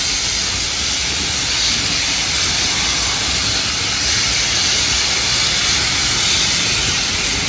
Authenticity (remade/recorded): recorded